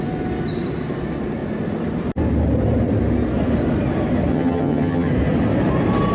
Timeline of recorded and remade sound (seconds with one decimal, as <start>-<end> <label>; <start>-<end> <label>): 0.0-4.3 recorded; 4.3-5.1 remade; 5.1-6.1 recorded